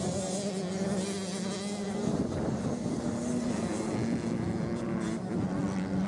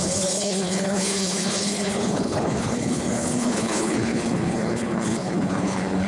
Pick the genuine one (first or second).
first